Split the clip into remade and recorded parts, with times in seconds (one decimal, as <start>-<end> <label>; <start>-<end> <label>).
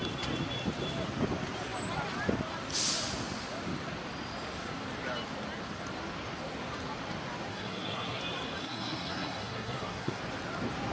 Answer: 0.0-7.5 recorded; 7.5-8.2 remade; 8.2-8.6 recorded; 8.6-10.2 remade; 10.2-10.9 recorded